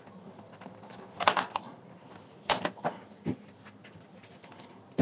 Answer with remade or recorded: recorded